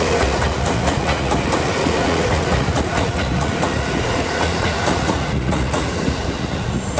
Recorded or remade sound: remade